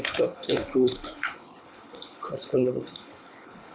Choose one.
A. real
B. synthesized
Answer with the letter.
B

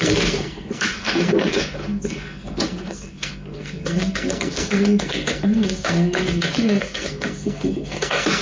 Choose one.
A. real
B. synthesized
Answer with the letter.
B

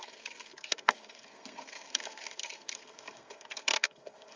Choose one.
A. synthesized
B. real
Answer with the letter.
A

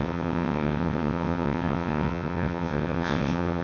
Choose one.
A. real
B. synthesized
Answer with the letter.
B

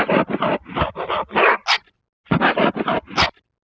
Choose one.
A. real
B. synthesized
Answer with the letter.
A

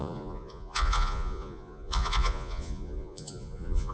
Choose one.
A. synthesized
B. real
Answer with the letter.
A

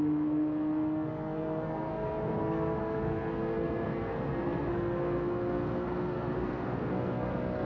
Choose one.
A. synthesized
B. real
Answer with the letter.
A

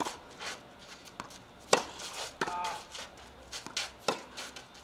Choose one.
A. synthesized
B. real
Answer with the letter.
B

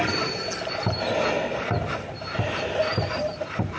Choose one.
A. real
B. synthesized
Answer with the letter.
A